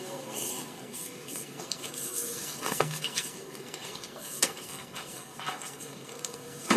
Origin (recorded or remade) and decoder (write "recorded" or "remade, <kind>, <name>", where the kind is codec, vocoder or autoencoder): remade, codec, SNAC